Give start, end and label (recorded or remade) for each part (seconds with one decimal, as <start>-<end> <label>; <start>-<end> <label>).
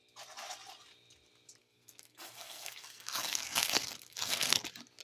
0.0-1.6 recorded; 1.6-4.6 remade; 4.6-5.0 recorded